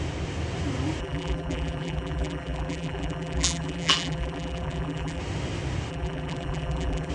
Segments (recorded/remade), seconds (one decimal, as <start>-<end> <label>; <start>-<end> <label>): 0.0-1.0 recorded; 1.0-5.2 remade; 5.2-5.9 recorded; 5.9-7.1 remade